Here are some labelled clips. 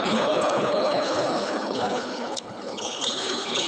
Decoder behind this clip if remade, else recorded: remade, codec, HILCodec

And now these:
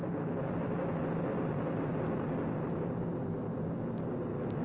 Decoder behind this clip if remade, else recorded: recorded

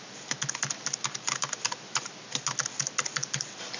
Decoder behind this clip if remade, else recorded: recorded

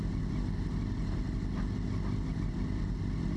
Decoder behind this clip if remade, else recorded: recorded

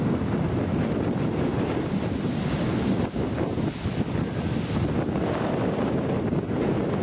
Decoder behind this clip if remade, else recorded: recorded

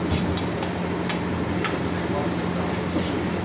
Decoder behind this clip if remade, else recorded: recorded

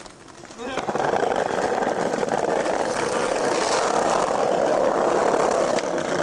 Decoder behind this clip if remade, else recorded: recorded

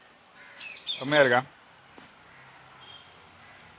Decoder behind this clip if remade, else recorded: recorded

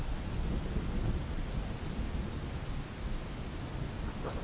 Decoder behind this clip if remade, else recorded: recorded